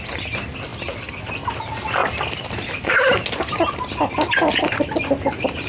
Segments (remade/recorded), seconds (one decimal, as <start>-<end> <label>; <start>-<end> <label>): 0.0-0.7 recorded; 0.7-1.3 remade; 1.3-2.0 recorded; 2.0-3.1 remade; 3.1-5.7 recorded